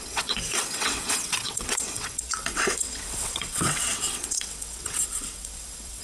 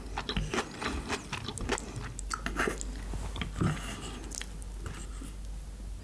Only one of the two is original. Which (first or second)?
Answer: second